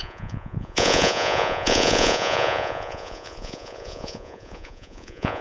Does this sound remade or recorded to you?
remade